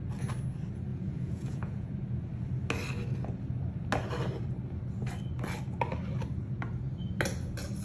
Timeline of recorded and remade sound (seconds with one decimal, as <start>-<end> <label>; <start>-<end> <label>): 0.0-0.9 recorded; 0.9-1.9 remade; 1.9-7.8 recorded